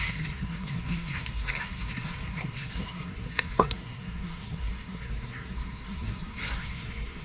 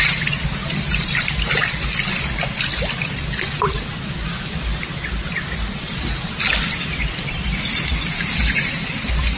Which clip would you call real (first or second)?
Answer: second